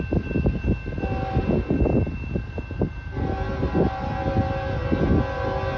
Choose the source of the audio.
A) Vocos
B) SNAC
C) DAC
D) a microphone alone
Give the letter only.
D